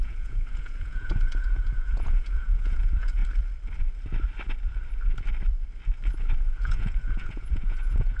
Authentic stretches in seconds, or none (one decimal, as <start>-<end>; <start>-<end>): 3.2-6.4